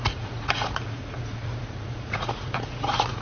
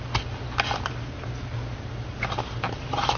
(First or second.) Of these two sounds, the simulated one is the first